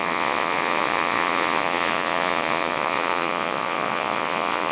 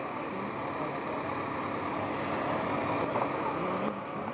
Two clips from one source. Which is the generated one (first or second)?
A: first